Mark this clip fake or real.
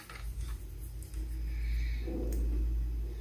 real